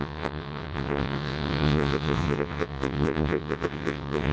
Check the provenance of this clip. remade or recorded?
remade